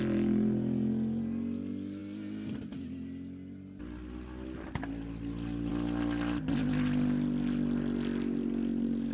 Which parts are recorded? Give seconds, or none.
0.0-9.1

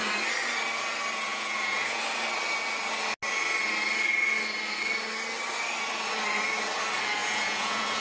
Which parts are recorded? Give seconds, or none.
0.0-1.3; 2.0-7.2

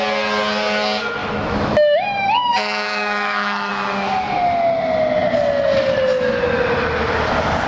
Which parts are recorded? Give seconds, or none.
0.0-1.2; 3.7-7.7

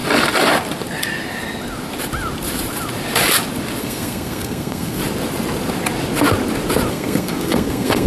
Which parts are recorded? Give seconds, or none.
0.0-3.8; 5.0-6.9

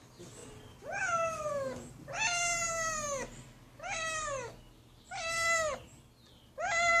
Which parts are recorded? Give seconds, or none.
0.0-7.0

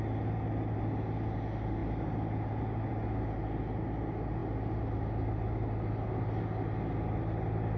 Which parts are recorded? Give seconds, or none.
0.0-7.8

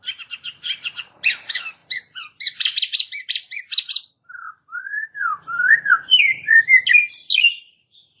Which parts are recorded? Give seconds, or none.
6.8-7.6